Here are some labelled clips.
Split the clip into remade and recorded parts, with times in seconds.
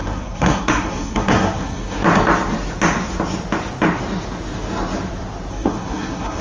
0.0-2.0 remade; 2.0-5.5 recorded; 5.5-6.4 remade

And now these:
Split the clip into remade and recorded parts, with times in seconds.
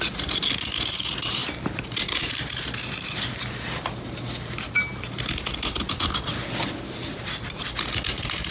0.0-8.5 recorded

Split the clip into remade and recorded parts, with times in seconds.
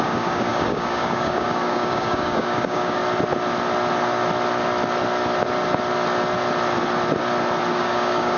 0.0-3.0 remade; 3.0-7.7 recorded; 7.7-8.4 remade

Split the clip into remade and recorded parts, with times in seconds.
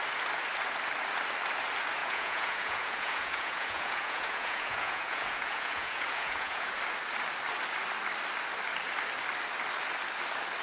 0.0-2.0 recorded; 2.0-6.8 remade; 6.8-10.6 recorded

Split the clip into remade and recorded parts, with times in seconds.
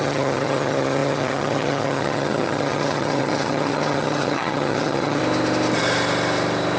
0.0-5.2 remade; 5.2-6.8 recorded